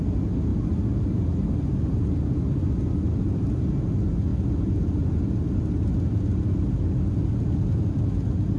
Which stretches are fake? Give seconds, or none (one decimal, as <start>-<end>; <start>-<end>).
none